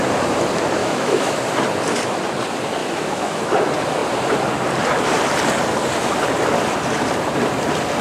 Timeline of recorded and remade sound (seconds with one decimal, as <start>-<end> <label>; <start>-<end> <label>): 0.0-0.8 recorded; 0.8-1.4 remade; 1.4-2.8 recorded; 2.8-3.5 remade; 3.5-8.0 recorded